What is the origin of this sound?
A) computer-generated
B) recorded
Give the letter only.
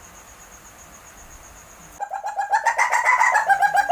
B